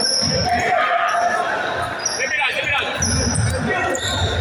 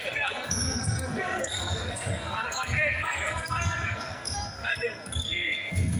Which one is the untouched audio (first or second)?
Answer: first